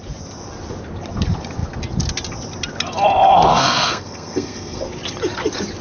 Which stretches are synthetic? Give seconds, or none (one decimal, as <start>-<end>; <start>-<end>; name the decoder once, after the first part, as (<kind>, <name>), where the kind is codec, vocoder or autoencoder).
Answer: 3.5-4.8 (codec, SNAC)